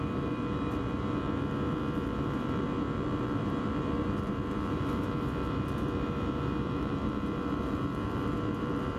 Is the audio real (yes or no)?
no